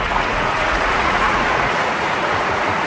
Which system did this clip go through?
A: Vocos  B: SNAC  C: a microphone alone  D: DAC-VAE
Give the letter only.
A